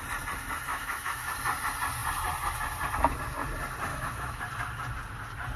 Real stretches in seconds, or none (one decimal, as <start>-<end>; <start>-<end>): 0.0-0.7; 1.3-3.9; 4.4-5.6

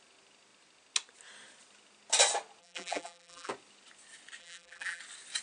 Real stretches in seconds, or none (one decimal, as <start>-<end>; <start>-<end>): 0.0-2.6; 3.5-4.4; 5.0-5.4

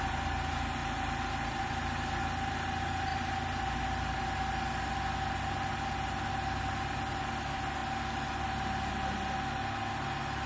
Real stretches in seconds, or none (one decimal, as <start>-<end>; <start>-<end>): 0.0-10.5

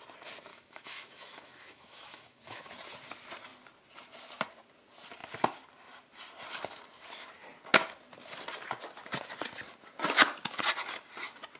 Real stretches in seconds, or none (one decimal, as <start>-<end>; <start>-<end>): 0.0-0.5; 2.7-11.6

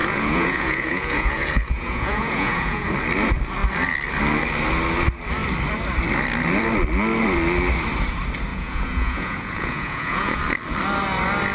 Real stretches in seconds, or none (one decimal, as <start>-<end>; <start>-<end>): 2.9-8.5; 10.4-11.5

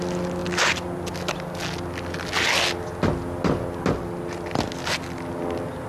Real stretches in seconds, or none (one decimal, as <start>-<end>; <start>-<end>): 0.0-5.9

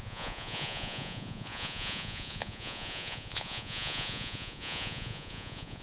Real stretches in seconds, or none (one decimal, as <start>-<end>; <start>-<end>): none